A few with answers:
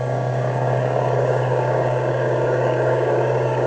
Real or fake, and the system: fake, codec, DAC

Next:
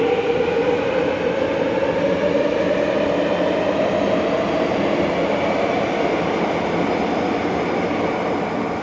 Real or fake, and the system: real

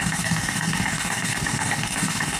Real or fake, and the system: fake, codec, DAC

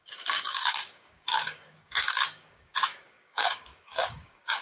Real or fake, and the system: fake, codec, DAC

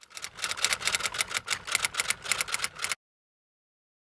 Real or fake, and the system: real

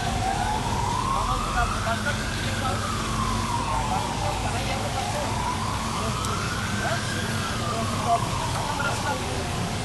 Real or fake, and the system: fake, codec, DAC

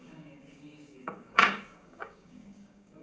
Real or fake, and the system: fake, codec, DAC